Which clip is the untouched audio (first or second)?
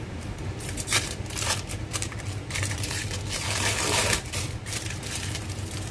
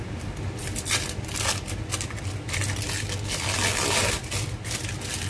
second